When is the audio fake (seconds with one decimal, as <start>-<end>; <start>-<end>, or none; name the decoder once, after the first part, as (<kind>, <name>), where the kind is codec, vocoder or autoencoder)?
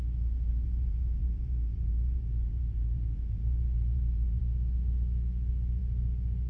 0.5-4.4 (vocoder, BigVGAN v2)